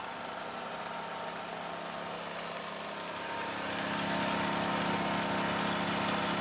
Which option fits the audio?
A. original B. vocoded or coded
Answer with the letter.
A